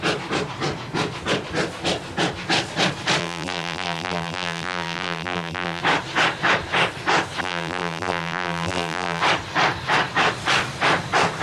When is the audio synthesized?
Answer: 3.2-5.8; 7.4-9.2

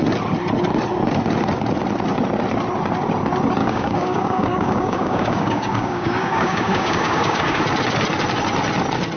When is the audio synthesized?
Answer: 3.6-7.6

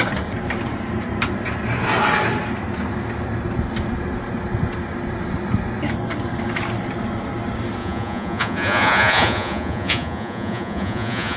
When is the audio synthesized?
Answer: 7.8-11.4